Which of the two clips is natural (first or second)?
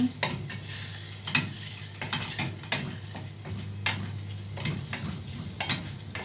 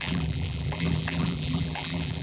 first